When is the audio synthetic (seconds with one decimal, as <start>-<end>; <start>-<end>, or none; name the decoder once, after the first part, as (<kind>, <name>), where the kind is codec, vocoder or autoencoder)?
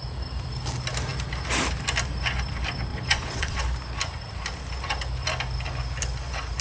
2.9-3.6 (vocoder, Vocos)